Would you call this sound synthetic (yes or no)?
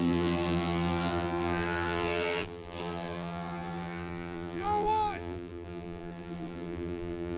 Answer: yes